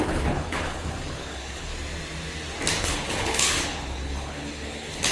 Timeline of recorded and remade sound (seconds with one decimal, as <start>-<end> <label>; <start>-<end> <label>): 0.0-1.7 remade; 1.7-2.8 recorded; 2.8-5.1 remade